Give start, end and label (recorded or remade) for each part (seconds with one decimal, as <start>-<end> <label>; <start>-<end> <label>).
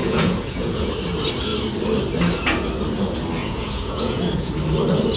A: 0.0-0.9 remade; 0.9-3.4 recorded; 3.4-4.5 remade; 4.5-5.2 recorded